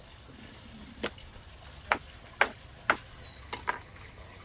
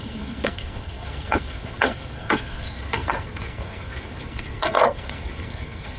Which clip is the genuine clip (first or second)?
first